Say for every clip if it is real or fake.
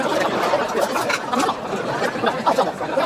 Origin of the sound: real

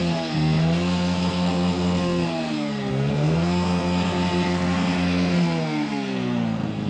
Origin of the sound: fake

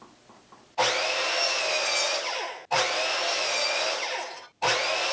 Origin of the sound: real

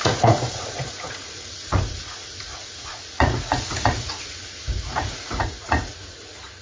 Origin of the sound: fake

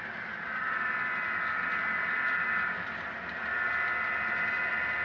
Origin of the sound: real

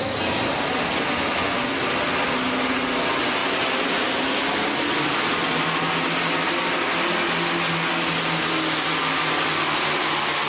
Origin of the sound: real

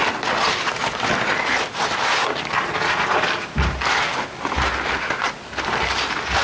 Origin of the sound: real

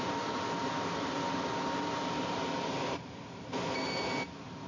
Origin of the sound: real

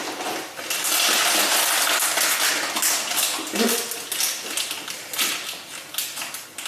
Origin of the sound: real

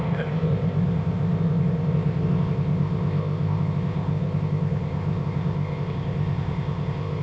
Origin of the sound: fake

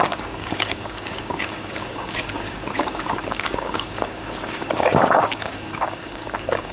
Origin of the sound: fake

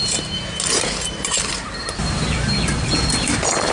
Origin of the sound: real